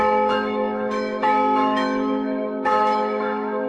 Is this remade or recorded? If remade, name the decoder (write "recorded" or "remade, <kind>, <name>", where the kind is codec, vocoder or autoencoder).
remade, autoencoder, DAC-VAE